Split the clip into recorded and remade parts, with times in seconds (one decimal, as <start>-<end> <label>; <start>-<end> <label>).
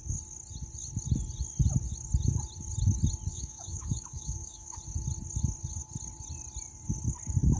0.0-3.3 recorded; 3.3-4.8 remade; 4.8-7.6 recorded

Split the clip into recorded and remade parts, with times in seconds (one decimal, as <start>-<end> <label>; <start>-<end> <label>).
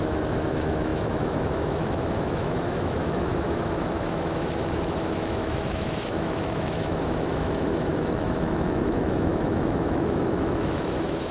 0.0-11.3 remade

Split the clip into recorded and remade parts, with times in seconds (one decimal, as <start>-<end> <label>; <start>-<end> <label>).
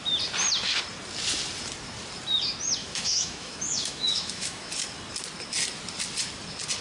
0.0-2.8 recorded; 2.8-4.7 remade; 4.7-6.8 recorded